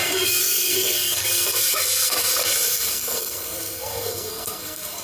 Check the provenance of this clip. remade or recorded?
remade